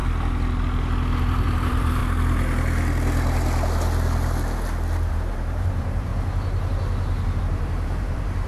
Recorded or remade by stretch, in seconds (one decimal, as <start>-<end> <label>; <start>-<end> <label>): 0.0-1.2 recorded; 1.2-2.0 remade; 2.0-5.1 recorded; 5.1-6.1 remade; 6.1-7.4 recorded; 7.4-8.5 remade

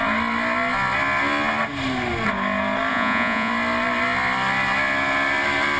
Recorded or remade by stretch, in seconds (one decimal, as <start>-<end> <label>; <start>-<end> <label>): 0.0-2.9 recorded; 2.9-3.5 remade; 3.5-5.8 recorded

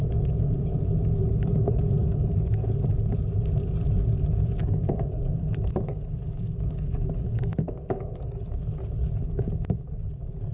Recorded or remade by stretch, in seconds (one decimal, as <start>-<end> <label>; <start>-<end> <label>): 0.0-2.0 recorded; 2.0-2.9 remade; 2.9-4.6 recorded; 4.6-8.5 remade; 8.5-9.2 recorded; 9.2-10.1 remade; 10.1-10.5 recorded

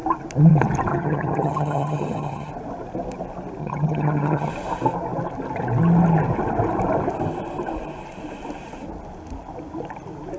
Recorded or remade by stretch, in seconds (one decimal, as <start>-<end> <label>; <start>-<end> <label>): 0.0-0.9 recorded; 0.9-2.5 remade; 2.5-3.6 recorded; 3.6-4.5 remade; 4.5-10.4 recorded